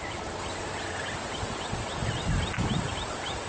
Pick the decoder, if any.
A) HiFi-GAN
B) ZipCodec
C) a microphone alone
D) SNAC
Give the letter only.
C